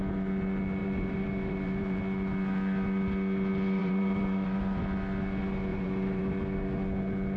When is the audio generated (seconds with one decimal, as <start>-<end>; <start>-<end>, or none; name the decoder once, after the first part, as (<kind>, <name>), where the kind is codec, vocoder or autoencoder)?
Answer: 0.8-2.0 (vocoder, BigVGAN v2); 3.8-4.8; 5.7-6.2